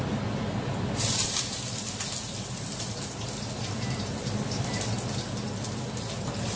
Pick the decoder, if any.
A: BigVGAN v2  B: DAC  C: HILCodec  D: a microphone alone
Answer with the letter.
D